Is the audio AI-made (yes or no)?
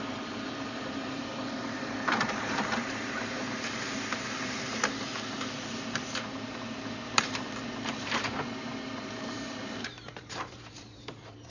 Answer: yes